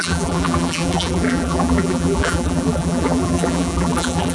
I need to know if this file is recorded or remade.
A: remade